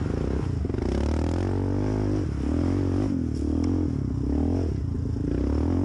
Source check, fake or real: real